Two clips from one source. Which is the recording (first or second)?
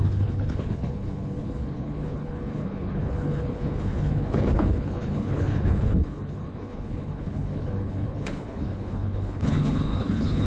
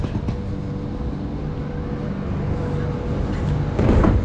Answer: second